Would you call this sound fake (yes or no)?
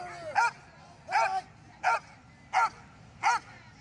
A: no